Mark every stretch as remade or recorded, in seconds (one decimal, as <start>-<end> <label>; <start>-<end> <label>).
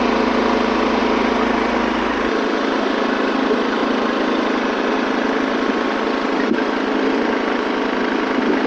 0.0-8.7 recorded